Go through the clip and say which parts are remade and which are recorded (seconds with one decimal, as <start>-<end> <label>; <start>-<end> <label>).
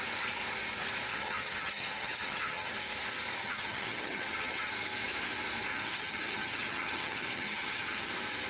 0.0-1.1 recorded; 1.1-2.7 remade; 2.7-3.4 recorded; 3.4-4.7 remade; 4.7-5.7 recorded; 5.7-8.1 remade; 8.1-8.5 recorded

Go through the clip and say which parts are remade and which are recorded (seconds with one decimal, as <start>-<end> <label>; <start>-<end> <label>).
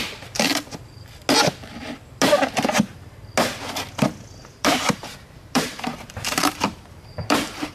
0.0-0.5 remade; 0.5-4.5 recorded; 4.5-7.7 remade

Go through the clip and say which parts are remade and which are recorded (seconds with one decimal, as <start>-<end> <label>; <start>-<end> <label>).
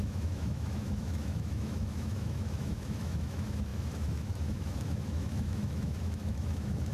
0.0-6.9 remade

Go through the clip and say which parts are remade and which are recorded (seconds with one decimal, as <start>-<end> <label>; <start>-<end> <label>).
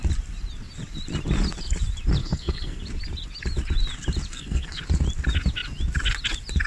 0.0-2.2 recorded; 2.2-2.8 remade; 2.8-4.3 recorded; 4.3-4.8 remade; 4.8-6.7 recorded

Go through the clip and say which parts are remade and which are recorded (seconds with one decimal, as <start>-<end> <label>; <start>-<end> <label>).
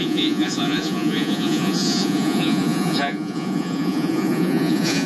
0.0-5.1 remade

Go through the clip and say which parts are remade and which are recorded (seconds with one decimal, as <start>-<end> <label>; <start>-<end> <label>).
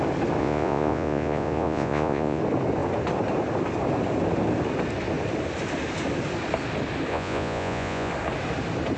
0.0-0.4 recorded; 0.4-2.4 remade; 2.4-7.1 recorded; 7.1-8.1 remade; 8.1-9.0 recorded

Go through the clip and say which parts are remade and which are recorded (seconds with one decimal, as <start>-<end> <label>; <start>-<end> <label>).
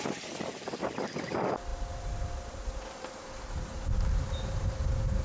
0.0-5.2 recorded